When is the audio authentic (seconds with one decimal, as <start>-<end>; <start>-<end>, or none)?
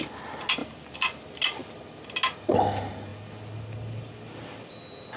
0.0-0.6; 1.2-3.1; 4.7-5.2